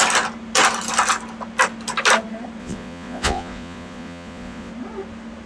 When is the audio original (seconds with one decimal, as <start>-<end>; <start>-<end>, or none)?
0.0-2.6; 4.7-5.5